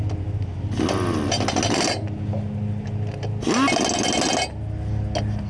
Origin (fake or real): real